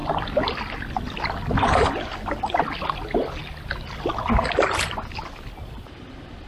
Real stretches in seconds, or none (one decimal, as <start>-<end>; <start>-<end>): 0.0-6.5